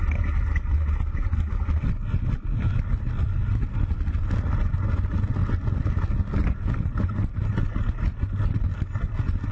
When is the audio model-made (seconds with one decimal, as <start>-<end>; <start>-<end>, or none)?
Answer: none